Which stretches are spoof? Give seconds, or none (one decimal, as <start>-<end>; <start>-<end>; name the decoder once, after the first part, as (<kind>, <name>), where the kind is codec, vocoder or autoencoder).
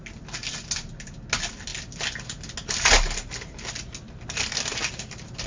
none